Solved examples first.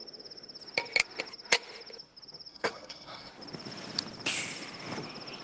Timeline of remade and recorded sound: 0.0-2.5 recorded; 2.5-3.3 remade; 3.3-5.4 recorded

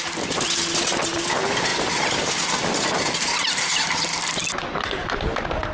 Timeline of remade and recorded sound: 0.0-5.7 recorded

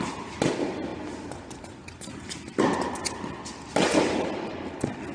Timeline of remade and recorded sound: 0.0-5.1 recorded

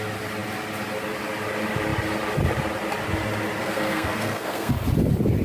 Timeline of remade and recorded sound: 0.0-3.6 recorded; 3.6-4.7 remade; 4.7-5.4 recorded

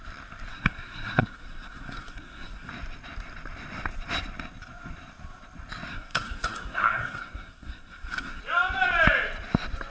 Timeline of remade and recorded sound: 0.0-0.5 recorded; 0.5-2.7 remade; 2.7-5.9 recorded; 5.9-8.4 remade; 8.4-9.9 recorded

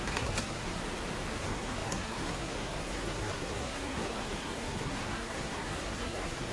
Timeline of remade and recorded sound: 0.0-0.8 remade; 0.8-1.4 recorded; 1.4-6.5 remade

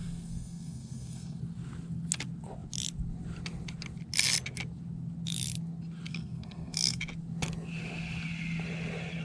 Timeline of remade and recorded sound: 0.0-1.4 remade; 1.4-6.1 recorded; 6.1-7.0 remade; 7.0-9.2 recorded

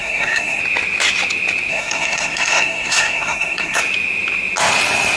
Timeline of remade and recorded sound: 0.0-0.6 remade; 0.6-1.7 recorded; 1.7-3.8 remade; 3.8-5.2 recorded